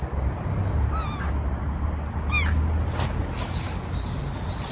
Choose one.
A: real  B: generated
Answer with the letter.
A